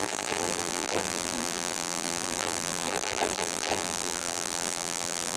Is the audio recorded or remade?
remade